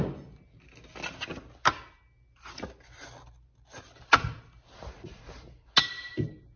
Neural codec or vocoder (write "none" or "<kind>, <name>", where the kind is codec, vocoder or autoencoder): none